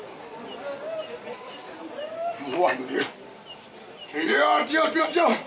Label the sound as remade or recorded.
remade